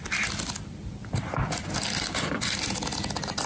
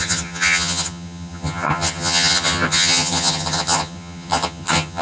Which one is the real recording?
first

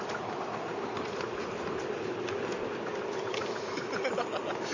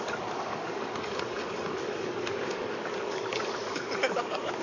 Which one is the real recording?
first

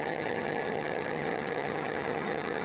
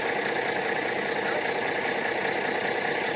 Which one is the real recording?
second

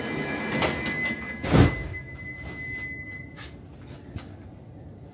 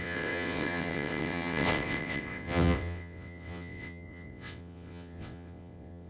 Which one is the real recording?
first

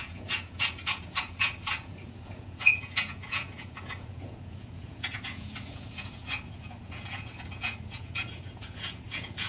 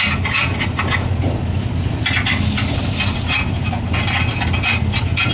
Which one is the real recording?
second